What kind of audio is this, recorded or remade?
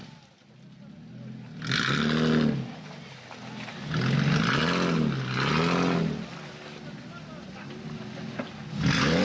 recorded